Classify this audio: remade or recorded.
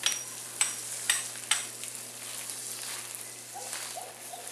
recorded